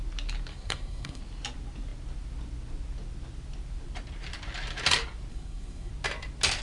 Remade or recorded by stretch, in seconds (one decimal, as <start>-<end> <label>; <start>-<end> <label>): 0.0-0.5 recorded; 0.5-1.2 remade; 1.2-5.3 recorded; 5.3-5.9 remade; 5.9-6.6 recorded